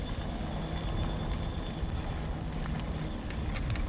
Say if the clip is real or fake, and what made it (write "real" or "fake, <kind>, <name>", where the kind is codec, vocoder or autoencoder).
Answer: real